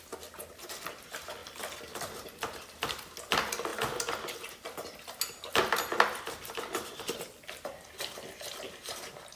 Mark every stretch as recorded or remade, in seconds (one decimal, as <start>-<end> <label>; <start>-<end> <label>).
0.0-9.4 recorded